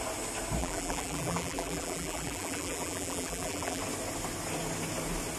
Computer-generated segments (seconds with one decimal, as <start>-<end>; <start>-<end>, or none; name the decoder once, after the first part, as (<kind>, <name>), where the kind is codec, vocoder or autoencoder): 0.6-3.8 (vocoder, BigVGAN v2)